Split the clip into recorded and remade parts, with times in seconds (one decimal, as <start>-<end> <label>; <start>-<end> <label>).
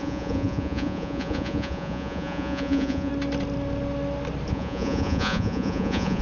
0.0-3.1 remade; 3.1-4.5 recorded; 4.5-6.2 remade